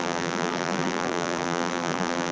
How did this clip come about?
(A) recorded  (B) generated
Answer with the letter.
B